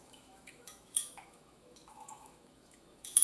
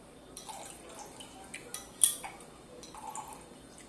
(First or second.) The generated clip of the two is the first